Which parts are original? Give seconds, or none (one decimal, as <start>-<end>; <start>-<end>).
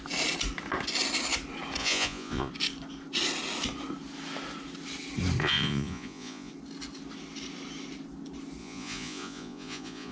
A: 0.0-1.8; 2.5-5.4; 6.5-8.6